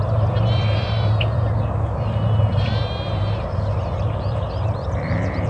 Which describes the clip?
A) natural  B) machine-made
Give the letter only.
B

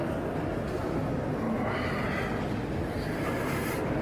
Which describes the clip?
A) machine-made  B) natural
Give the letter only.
B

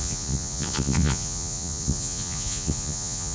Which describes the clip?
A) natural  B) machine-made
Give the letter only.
B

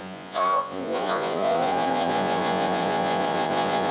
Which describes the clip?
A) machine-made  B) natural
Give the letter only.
A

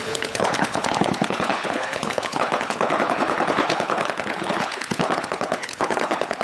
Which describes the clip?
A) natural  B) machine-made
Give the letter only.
B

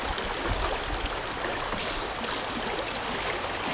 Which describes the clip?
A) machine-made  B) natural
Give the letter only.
B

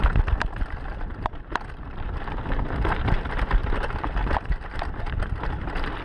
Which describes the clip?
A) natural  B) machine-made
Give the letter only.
A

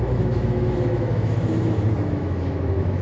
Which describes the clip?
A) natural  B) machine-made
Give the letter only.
B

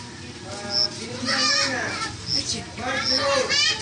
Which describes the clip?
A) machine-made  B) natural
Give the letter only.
B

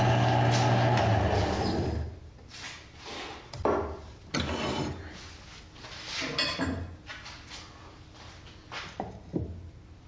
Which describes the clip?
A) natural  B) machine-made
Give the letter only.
A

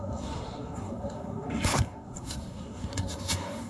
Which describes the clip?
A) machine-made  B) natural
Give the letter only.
A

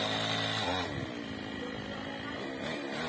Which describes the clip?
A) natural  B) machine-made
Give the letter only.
A